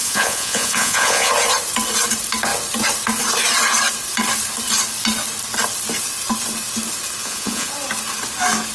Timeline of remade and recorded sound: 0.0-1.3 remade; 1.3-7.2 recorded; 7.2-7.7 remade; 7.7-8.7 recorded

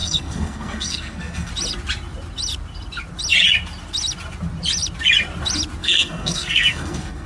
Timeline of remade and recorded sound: 0.0-1.5 remade; 1.5-5.8 recorded; 5.8-7.3 remade

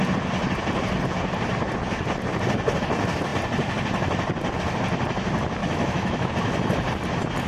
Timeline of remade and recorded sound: 0.0-5.6 recorded; 5.6-6.3 remade; 6.3-7.5 recorded

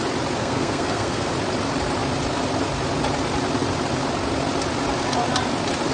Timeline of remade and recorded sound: 0.0-0.4 recorded; 0.4-1.3 remade; 1.3-5.9 recorded

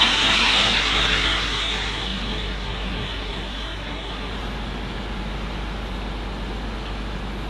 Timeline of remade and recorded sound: 0.0-4.3 remade; 4.3-7.5 recorded

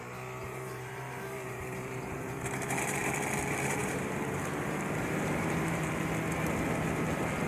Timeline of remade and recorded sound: 0.0-0.4 recorded; 0.4-3.1 remade; 3.1-3.8 recorded; 3.8-6.1 remade; 6.1-7.5 recorded

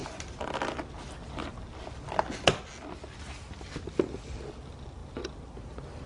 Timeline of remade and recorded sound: 0.0-6.1 recorded

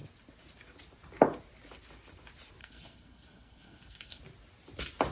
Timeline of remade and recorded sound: 0.0-2.6 recorded; 2.6-4.2 remade; 4.2-5.1 recorded